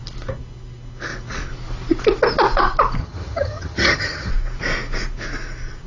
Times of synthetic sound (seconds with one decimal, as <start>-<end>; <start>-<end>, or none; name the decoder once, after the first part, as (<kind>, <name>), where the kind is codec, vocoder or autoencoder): 3.0-4.3 (vocoder, HiFi-GAN)